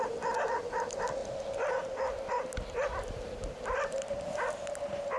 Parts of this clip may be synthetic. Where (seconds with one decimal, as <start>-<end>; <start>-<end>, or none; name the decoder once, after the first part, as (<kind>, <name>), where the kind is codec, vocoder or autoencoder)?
1.2-4.1 (vocoder, BigVGAN v2)